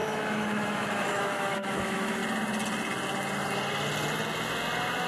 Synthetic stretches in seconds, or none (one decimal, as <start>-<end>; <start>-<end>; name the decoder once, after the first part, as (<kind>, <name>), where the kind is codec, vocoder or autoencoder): 0.0-2.2 (autoencoder, DAC-VAE)